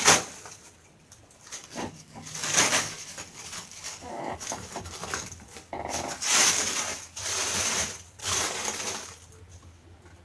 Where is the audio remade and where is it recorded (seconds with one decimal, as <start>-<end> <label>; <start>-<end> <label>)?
0.0-1.6 recorded; 1.6-6.8 remade; 6.8-8.2 recorded; 8.2-8.8 remade; 8.8-10.2 recorded

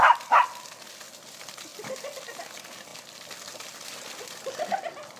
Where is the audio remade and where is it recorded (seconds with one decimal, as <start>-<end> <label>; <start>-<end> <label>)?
0.0-5.2 recorded